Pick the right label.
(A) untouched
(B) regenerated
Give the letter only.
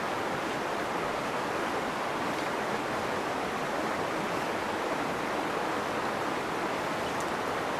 A